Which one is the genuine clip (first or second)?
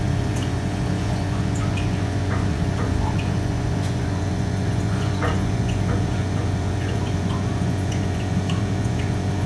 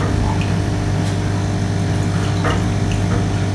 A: second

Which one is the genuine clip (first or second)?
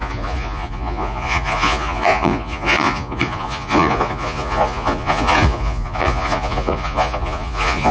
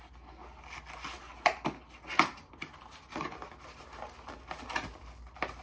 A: second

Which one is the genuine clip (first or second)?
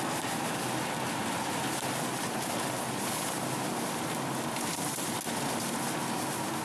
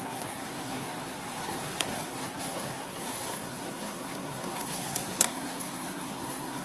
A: first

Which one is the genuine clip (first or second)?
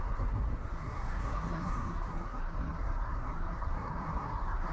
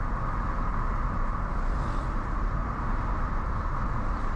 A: second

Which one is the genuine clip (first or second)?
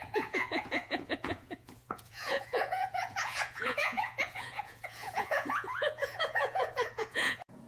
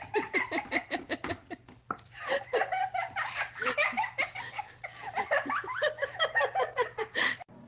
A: second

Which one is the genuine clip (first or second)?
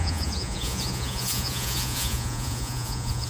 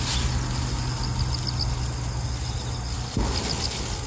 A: second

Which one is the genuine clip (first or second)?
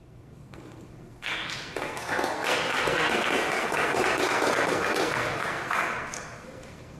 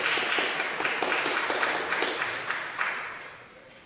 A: second